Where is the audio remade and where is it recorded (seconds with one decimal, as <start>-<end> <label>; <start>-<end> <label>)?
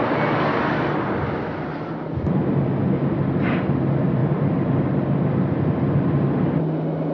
0.0-7.1 recorded